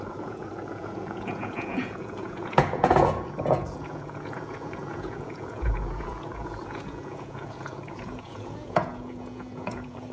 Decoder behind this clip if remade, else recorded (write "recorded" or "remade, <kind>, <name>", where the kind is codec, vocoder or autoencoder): remade, vocoder, Vocos